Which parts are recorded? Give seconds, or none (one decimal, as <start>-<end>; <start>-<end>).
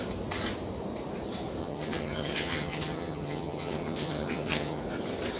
0.0-1.6; 4.8-5.4